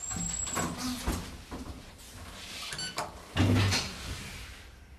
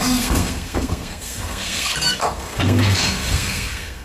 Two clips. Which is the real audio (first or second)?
first